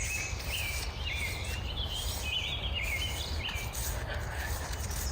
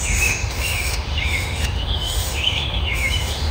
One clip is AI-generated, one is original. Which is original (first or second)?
first